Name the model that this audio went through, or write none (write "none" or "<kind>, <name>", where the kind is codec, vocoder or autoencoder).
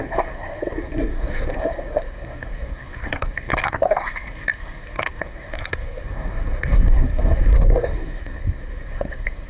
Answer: codec, SNAC